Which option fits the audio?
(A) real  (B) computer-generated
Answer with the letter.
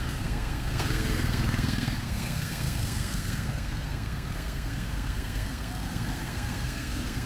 B